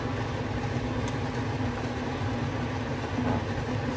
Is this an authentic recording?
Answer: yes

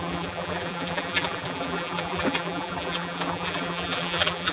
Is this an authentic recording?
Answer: no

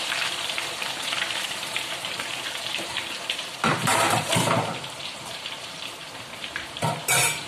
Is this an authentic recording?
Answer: no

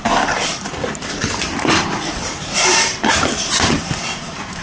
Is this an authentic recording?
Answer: no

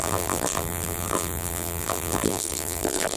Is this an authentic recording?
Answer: no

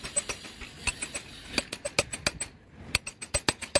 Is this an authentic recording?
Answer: yes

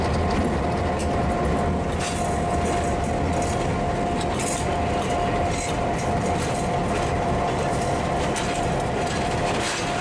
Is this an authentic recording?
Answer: yes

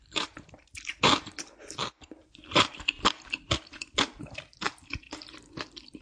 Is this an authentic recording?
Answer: no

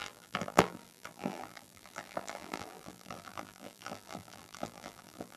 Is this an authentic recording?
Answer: no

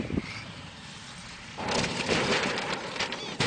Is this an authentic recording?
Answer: no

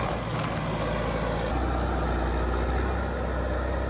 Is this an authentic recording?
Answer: yes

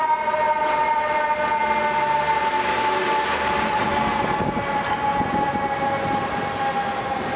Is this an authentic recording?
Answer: yes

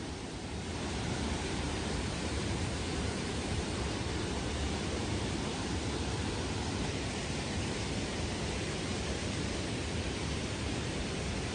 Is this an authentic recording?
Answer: no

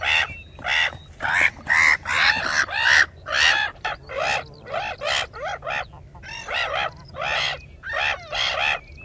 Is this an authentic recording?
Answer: yes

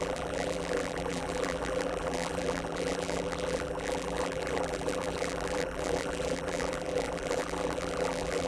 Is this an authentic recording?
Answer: no